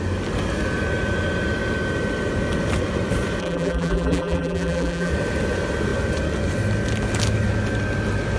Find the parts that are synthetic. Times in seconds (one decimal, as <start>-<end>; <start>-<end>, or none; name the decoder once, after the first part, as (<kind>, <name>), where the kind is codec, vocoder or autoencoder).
3.4-5.1 (vocoder, BigVGAN v2)